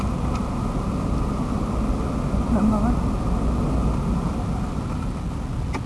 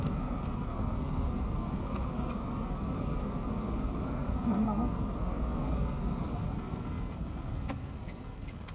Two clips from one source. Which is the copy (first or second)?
second